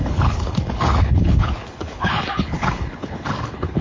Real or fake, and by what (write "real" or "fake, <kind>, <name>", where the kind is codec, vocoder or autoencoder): fake, codec, HILCodec